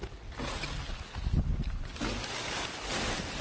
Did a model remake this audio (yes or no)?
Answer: no